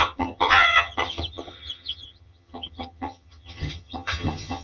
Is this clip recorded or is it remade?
remade